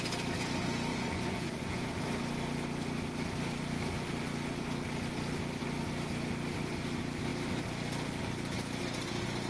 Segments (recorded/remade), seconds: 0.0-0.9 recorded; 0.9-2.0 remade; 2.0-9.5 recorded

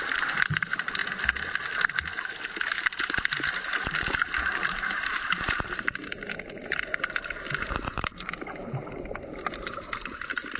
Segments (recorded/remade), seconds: 0.0-1.0 remade; 1.0-3.0 recorded; 3.0-10.6 remade

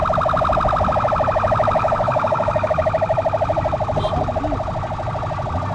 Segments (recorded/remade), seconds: 0.0-1.8 recorded; 1.8-2.7 remade; 2.7-5.7 recorded